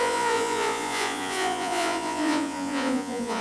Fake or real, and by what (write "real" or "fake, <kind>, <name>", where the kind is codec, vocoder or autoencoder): fake, vocoder, Vocos